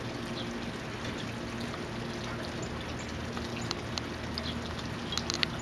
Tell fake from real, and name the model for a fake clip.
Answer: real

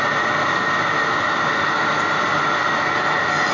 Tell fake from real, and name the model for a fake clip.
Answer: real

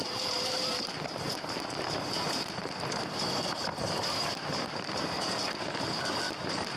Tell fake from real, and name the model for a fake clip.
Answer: fake, vocoder, BigVGAN v2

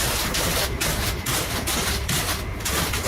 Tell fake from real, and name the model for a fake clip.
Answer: fake, vocoder, BigVGAN v2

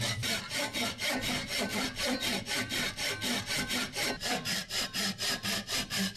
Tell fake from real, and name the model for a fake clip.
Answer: fake, vocoder, BigVGAN v2